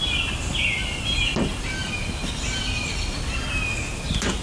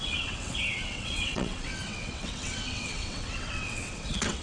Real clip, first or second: first